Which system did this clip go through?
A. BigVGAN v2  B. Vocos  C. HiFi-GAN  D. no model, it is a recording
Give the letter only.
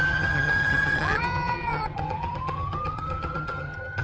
C